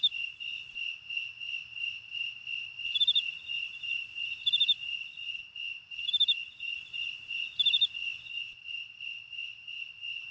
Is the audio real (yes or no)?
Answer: no